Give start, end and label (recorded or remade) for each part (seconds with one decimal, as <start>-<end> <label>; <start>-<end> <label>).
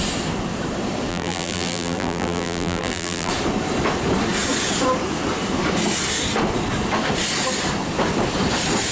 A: 0.0-1.1 recorded; 1.1-3.3 remade; 3.3-8.9 recorded